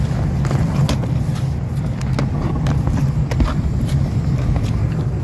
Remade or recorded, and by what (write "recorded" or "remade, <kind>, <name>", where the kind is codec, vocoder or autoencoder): recorded